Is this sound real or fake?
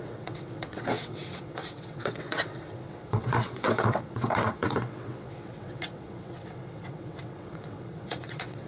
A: fake